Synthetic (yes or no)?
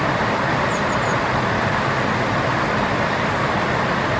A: no